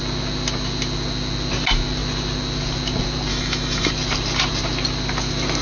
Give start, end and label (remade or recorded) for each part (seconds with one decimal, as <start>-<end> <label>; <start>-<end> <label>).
0.0-3.3 recorded; 3.3-3.9 remade; 3.9-5.6 recorded